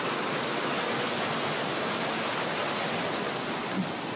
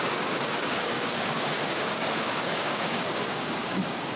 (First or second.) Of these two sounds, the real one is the first